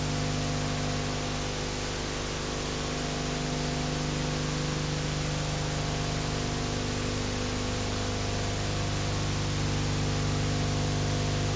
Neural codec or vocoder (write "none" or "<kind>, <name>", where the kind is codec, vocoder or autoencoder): none